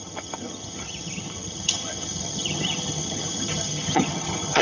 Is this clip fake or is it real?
fake